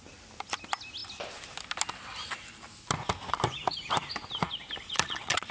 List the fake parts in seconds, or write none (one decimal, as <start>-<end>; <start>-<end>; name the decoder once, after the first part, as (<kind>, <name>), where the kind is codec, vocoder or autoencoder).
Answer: 4.8-5.5 (vocoder, Vocos)